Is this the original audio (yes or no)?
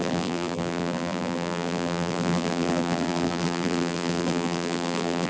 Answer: no